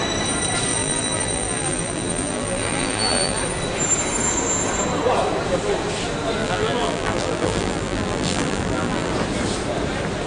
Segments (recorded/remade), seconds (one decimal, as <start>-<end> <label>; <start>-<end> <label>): 0.0-0.7 recorded; 0.7-3.4 remade; 3.4-6.4 recorded; 6.4-9.1 remade; 9.1-10.3 recorded